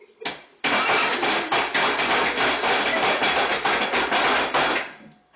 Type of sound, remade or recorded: recorded